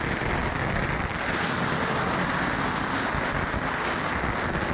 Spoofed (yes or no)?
no